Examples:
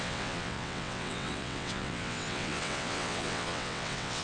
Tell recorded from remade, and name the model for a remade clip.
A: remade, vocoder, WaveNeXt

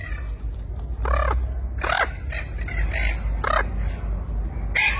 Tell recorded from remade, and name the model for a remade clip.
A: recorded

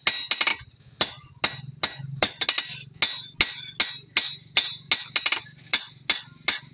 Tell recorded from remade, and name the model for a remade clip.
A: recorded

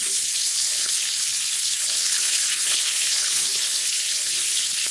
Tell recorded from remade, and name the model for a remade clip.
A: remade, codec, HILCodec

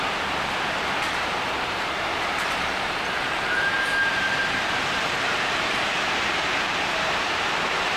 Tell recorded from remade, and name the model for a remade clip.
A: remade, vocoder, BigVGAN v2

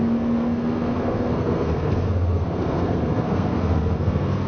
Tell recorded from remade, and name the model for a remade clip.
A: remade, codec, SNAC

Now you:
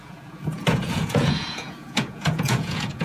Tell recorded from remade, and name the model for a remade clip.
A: remade, vocoder, Vocos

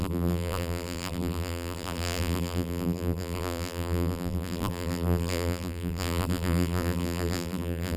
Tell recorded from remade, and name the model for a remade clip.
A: remade, vocoder, BigVGAN v2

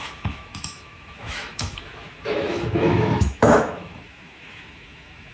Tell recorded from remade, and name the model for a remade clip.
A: remade, autoencoder, DAC-VAE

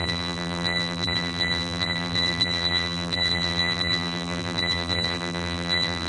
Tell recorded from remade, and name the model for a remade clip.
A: remade, vocoder, BigVGAN v2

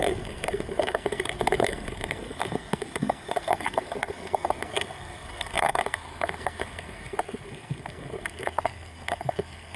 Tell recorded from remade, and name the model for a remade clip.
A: remade, codec, SNAC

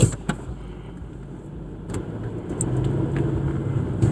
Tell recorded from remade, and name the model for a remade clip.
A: recorded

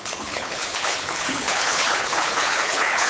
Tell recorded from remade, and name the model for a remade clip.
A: remade, codec, HILCodec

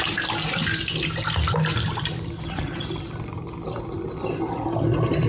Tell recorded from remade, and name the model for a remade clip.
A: recorded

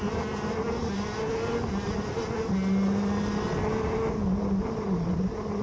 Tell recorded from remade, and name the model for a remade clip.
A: recorded